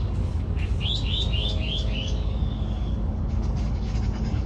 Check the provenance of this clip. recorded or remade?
remade